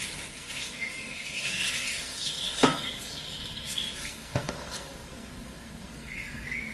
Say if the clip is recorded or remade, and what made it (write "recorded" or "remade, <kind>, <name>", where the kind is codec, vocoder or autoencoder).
remade, codec, SNAC